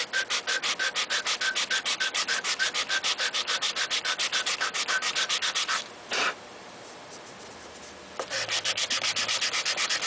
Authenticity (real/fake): real